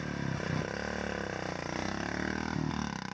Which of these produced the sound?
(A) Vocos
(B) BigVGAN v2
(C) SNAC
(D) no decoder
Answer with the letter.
D